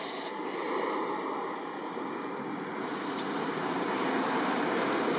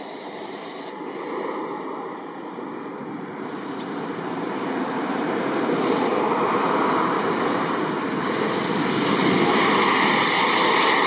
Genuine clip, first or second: first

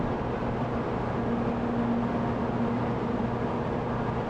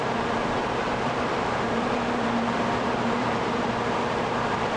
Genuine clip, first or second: first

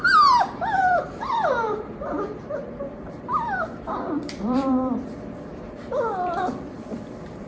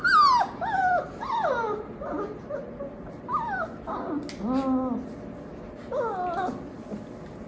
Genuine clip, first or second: second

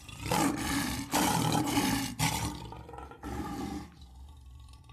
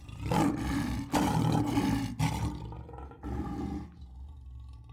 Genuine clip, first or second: second